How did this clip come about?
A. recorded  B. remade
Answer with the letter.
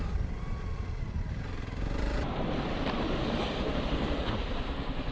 B